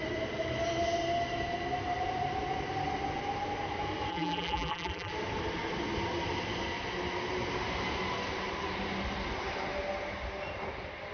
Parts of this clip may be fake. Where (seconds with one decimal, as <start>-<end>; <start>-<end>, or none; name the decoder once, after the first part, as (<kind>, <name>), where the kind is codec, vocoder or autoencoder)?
4.1-5.1 (vocoder, BigVGAN v2)